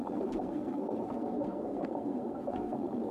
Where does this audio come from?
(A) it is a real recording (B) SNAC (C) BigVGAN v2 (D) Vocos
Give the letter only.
B